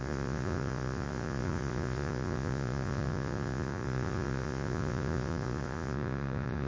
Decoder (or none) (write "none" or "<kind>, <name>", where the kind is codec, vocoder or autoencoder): vocoder, Vocos